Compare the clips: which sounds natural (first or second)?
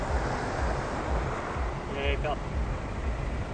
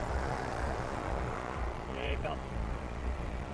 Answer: first